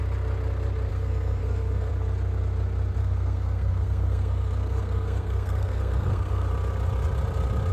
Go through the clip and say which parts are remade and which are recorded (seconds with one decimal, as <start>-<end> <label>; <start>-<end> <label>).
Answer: 0.0-0.9 recorded; 0.9-1.9 remade; 1.9-3.0 recorded; 3.0-6.5 remade; 6.5-7.7 recorded